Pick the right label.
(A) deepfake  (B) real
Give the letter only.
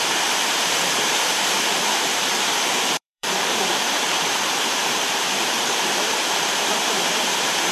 A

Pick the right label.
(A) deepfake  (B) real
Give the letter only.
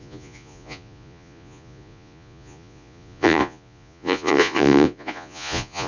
A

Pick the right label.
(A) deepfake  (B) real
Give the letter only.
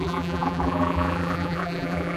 A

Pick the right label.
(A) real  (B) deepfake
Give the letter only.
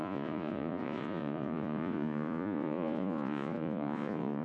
B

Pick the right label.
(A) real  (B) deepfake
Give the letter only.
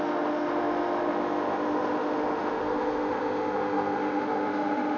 B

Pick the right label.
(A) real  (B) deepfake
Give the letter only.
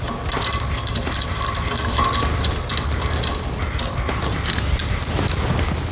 A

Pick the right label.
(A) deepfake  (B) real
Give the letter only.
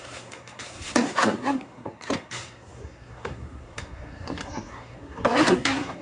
A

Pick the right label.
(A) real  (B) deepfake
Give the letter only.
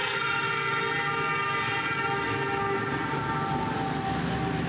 A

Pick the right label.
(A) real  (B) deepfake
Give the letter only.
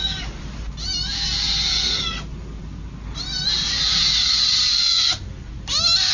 A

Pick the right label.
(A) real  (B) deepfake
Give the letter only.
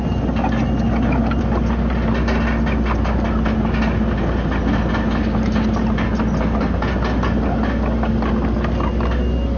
A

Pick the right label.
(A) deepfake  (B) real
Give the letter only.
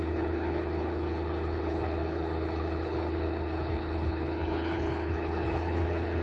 A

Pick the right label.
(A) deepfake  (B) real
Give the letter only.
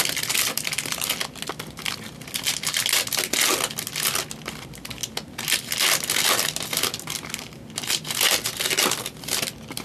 B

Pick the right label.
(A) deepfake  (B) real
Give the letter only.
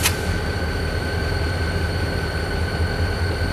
B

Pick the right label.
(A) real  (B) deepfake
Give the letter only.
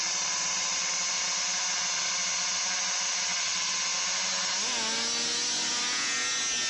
A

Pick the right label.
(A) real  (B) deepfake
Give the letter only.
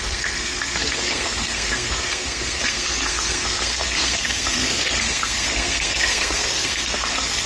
B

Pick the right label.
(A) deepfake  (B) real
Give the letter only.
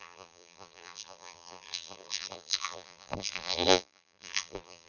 A